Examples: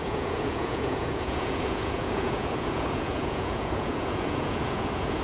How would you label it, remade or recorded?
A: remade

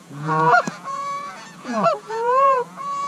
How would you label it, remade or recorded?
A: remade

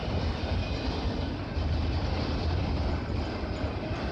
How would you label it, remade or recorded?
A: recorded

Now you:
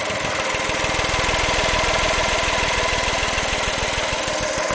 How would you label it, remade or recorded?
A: recorded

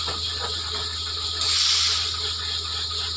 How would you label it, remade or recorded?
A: recorded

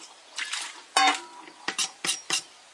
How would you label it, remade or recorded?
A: recorded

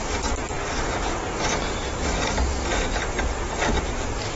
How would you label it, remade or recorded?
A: recorded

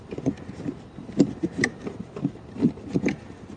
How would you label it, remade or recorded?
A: recorded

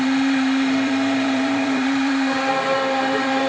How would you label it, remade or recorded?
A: remade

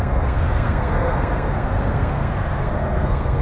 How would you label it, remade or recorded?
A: remade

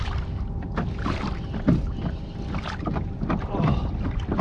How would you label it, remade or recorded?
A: recorded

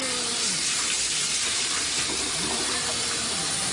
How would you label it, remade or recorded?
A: recorded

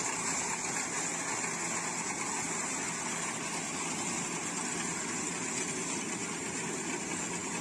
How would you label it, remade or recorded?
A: recorded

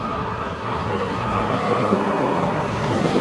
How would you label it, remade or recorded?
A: remade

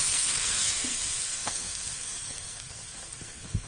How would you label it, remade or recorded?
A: remade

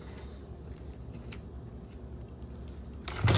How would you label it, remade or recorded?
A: recorded